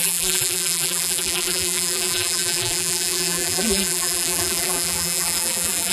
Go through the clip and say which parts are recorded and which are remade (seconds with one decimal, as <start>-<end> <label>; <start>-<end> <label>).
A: 0.0-5.9 remade